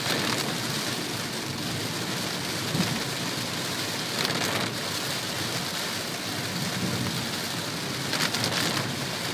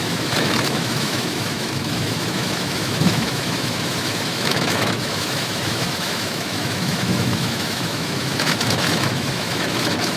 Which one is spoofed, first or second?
second